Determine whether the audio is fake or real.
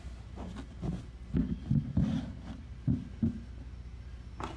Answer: real